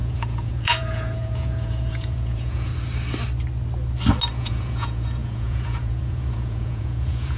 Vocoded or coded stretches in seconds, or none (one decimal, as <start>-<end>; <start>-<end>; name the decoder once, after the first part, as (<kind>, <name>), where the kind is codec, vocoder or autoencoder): 0.0-2.7 (vocoder, Vocos); 4.3-7.4